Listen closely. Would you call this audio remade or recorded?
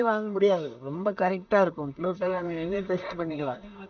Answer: remade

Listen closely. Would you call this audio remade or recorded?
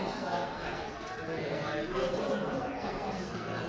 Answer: remade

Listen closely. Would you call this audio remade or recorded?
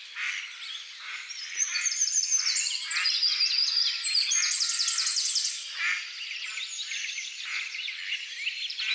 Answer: recorded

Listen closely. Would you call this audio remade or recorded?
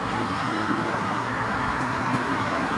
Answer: remade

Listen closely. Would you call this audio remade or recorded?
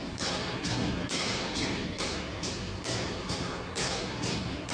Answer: remade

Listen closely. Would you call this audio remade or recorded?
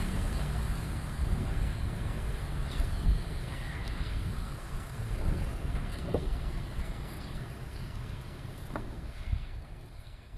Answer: remade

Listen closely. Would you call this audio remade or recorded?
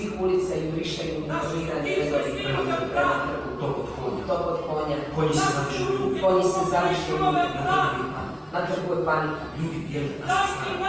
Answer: recorded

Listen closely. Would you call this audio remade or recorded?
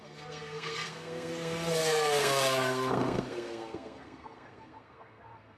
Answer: remade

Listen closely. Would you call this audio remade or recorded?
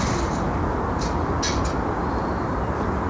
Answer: recorded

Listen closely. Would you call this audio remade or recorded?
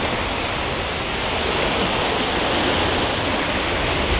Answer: recorded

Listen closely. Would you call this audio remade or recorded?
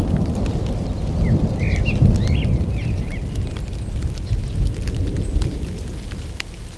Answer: recorded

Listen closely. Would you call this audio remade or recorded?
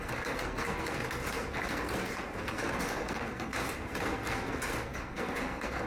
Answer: remade